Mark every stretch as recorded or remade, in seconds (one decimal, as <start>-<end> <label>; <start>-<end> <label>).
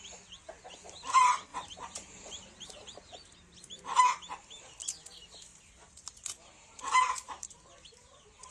0.0-1.5 recorded; 1.5-4.0 remade; 4.0-5.5 recorded; 5.5-8.5 remade